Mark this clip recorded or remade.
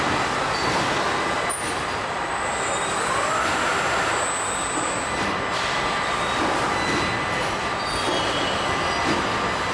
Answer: recorded